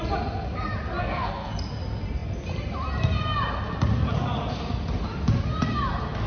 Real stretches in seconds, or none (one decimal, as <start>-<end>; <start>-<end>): 0.0-1.0; 1.5-6.3